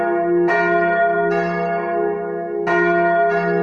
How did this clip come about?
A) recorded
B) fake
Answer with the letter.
A